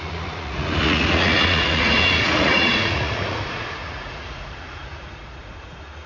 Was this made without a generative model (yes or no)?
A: no